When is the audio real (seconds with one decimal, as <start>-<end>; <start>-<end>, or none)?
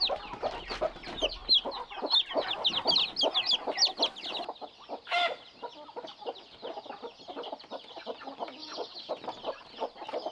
0.0-8.6; 9.1-10.3